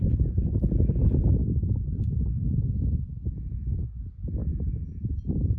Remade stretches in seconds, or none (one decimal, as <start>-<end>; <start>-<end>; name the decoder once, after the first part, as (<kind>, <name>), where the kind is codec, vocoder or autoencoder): none